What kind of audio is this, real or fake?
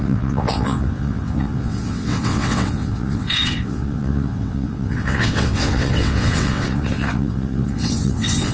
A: fake